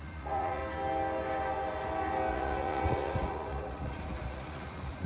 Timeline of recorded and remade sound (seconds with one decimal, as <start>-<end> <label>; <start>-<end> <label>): 0.0-0.6 remade; 0.6-2.3 recorded; 2.3-5.1 remade

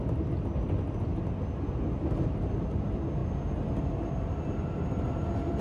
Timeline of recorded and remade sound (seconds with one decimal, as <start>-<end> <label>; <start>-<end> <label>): 0.0-5.6 recorded